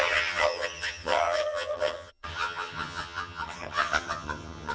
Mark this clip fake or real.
fake